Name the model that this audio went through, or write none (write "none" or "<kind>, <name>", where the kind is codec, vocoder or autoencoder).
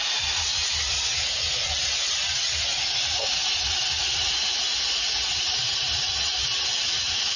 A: vocoder, BigVGAN v2